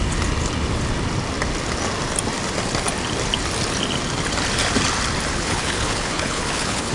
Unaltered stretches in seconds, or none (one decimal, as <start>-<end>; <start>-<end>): 0.0-5.3